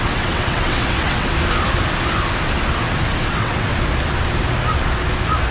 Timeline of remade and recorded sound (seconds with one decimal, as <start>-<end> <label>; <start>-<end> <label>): 0.0-1.3 remade; 1.3-3.2 recorded; 3.2-3.7 remade; 3.7-5.5 recorded